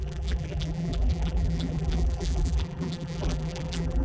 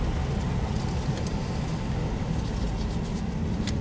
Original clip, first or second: second